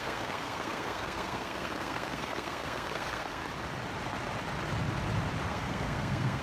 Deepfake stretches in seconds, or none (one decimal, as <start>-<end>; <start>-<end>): 0.0-3.4; 5.5-6.4